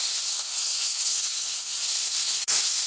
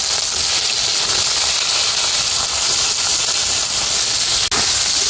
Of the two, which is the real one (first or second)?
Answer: second